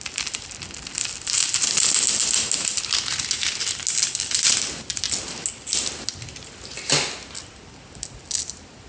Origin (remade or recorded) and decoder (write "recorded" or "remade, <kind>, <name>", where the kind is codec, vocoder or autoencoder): recorded